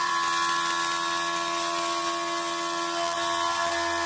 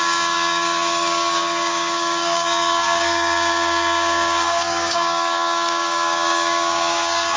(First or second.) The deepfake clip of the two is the second